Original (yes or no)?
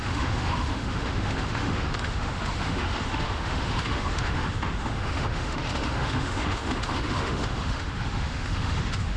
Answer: no